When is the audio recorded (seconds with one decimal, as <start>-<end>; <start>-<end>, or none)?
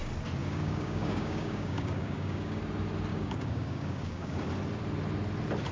0.0-0.4; 2.6-3.1; 4.5-5.7